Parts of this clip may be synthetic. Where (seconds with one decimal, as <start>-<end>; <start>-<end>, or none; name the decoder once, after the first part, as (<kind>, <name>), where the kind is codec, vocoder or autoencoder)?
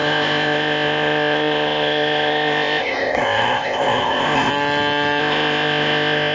0.0-4.5 (codec, ZipCodec); 5.2-6.3